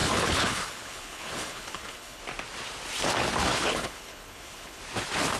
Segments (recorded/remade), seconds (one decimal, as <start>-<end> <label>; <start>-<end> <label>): 0.0-2.2 remade; 2.2-3.5 recorded; 3.5-4.8 remade; 4.8-5.4 recorded